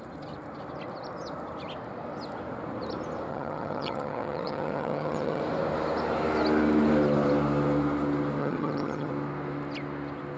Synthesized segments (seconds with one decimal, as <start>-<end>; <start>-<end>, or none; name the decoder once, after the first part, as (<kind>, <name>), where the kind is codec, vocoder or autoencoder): 3.3-5.4 (vocoder, HiFi-GAN); 8.4-9.1